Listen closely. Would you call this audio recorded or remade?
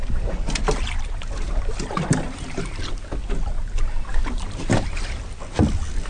recorded